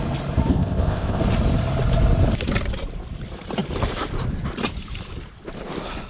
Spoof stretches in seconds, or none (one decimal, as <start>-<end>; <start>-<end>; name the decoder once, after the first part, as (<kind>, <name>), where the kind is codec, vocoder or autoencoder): 0.5-1.2 (codec, ZipCodec)